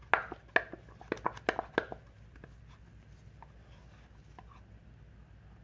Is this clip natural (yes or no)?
yes